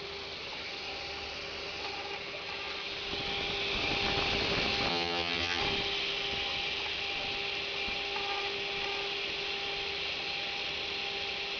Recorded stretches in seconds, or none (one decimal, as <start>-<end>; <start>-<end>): 0.0-4.9; 5.6-11.6